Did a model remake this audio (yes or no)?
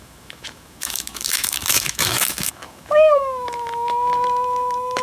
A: yes